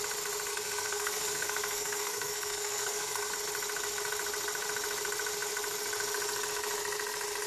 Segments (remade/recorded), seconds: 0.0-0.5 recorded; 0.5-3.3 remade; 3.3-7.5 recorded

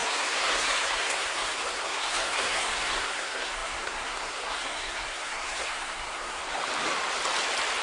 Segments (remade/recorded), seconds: 0.0-6.4 remade; 6.4-7.8 recorded